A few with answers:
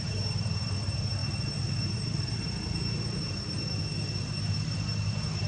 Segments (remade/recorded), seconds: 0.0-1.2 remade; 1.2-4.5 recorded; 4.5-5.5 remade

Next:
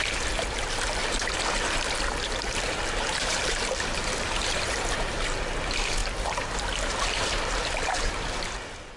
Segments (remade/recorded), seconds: 0.0-9.0 remade

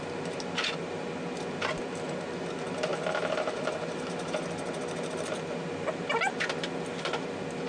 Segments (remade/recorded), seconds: 0.0-2.9 recorded; 2.9-4.4 remade; 4.4-7.7 recorded

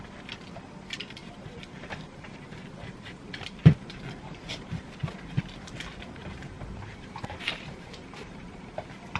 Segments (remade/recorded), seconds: 0.0-1.2 recorded; 1.2-4.0 remade; 4.0-6.2 recorded; 6.2-8.7 remade; 8.7-9.2 recorded

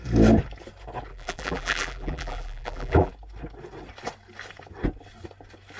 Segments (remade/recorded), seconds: 0.0-1.1 recorded; 1.1-3.1 remade; 3.1-5.8 recorded

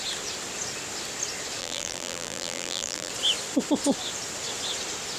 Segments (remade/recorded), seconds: 0.0-1.6 recorded; 1.6-3.1 remade; 3.1-5.2 recorded